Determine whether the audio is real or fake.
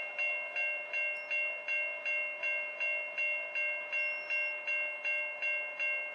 real